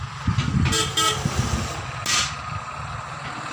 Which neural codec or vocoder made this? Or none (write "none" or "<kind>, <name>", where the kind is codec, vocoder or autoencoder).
none